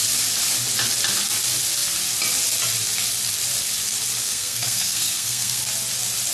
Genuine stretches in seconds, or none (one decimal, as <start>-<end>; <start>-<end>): 0.0-4.2; 5.6-6.3